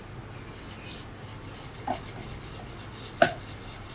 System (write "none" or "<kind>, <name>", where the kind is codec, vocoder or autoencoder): none